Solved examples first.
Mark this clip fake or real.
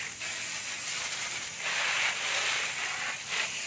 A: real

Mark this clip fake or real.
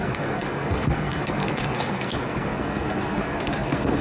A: fake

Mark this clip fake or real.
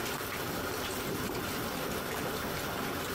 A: real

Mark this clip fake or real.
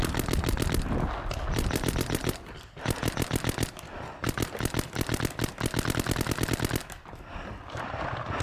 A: real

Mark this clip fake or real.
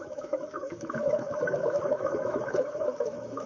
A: fake